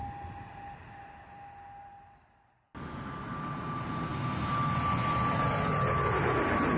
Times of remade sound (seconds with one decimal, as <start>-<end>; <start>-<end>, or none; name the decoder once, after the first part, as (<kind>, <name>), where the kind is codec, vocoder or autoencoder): none